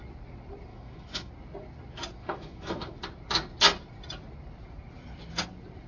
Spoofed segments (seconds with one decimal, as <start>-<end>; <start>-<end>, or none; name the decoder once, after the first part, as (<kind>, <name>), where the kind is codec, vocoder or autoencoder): 0.7-1.3 (autoencoder, DAC-VAE); 2.2-3.0